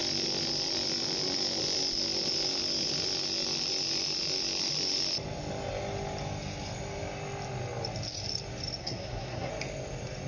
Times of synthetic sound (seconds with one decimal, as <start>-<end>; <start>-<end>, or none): 8.8-9.5